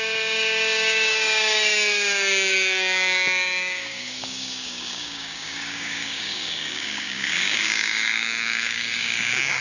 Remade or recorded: remade